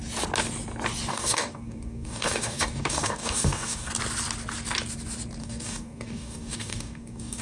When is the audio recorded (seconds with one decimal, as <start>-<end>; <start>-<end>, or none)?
0.0-1.1; 3.9-5.4